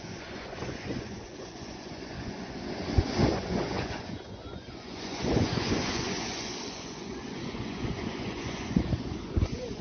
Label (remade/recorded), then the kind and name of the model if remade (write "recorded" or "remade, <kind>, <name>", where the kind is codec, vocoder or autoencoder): remade, vocoder, Vocos